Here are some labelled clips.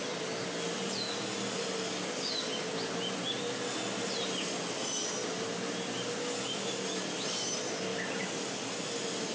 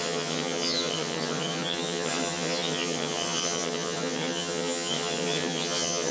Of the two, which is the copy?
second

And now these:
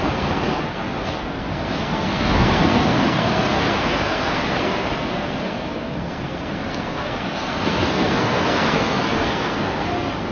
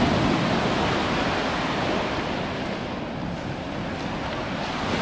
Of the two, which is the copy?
first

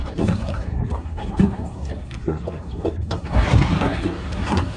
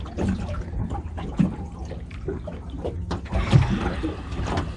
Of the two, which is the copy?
first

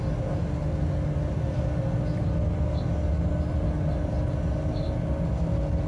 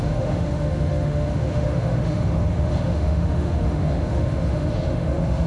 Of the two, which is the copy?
second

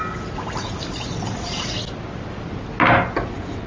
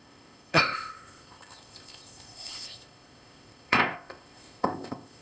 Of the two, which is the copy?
second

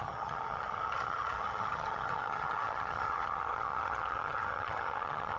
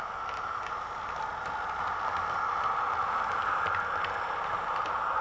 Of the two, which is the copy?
first